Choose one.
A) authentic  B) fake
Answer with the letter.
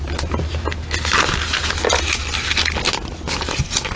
A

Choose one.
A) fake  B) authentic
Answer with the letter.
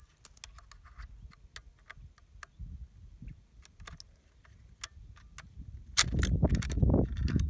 B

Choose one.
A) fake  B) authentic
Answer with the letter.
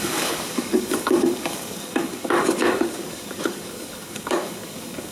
A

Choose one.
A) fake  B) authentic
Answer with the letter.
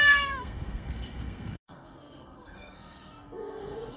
A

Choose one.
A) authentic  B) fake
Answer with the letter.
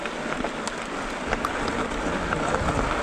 A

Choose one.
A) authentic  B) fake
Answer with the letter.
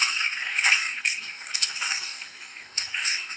B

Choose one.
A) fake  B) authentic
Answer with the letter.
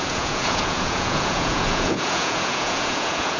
A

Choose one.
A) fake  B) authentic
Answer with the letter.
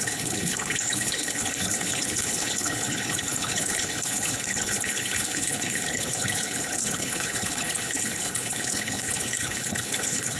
A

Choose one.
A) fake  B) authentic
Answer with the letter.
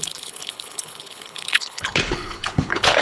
A